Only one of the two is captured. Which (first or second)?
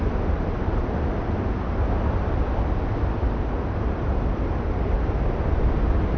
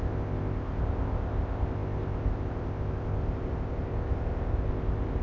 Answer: first